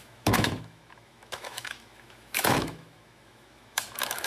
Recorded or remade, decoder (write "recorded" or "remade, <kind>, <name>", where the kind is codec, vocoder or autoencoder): remade, autoencoder, DAC-VAE